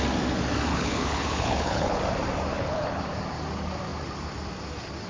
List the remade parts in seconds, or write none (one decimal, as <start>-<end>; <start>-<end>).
0.7-2.0; 2.5-3.0